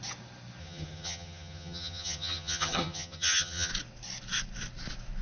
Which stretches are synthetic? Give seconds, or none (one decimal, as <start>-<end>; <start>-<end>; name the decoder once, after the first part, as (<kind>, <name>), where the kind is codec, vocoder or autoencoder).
0.6-3.7 (vocoder, HiFi-GAN)